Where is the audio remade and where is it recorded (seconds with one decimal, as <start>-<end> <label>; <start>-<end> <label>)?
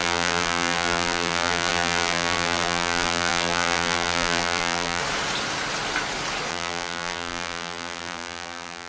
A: 0.0-5.0 remade; 5.0-6.5 recorded; 6.5-8.9 remade